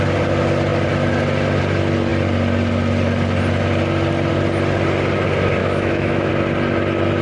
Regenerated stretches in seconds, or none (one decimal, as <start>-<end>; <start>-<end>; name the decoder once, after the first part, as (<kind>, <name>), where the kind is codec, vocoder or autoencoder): 5.6-6.3 (autoencoder, DAC-VAE)